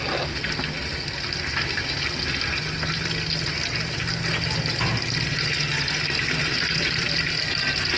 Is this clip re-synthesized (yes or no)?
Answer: no